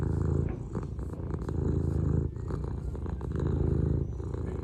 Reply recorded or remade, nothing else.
recorded